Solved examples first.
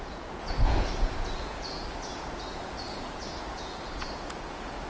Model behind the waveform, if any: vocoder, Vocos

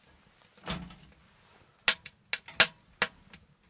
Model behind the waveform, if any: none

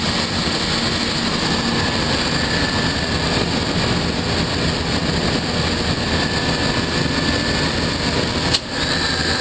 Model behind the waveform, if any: none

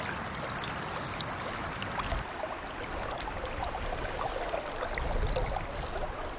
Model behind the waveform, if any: none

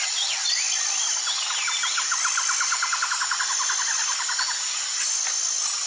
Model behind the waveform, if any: none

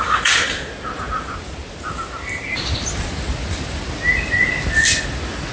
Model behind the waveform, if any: none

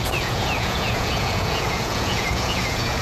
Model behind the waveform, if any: vocoder, Vocos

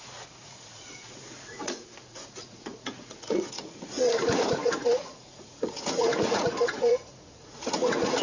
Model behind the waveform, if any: vocoder, Vocos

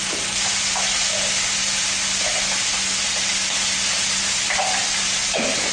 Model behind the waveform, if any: none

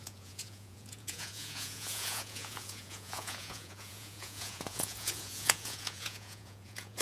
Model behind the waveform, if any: vocoder, Vocos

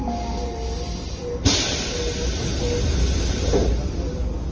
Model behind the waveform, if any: none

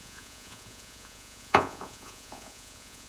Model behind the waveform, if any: vocoder, Vocos